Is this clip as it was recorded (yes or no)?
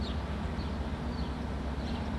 yes